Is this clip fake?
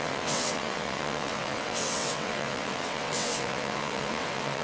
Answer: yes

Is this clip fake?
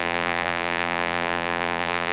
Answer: yes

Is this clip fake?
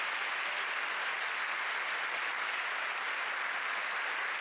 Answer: no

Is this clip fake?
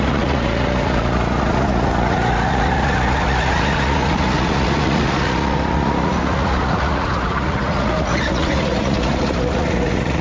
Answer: yes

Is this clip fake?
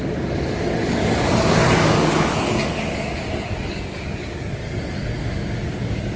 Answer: yes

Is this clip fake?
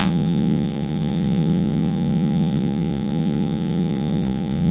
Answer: yes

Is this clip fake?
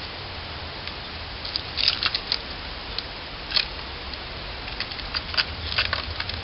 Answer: no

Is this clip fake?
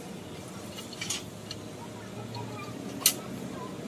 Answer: no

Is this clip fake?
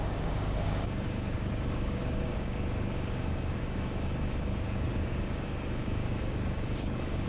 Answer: yes